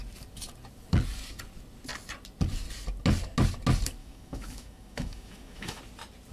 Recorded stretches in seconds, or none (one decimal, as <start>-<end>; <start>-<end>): 0.0-4.0; 5.8-6.3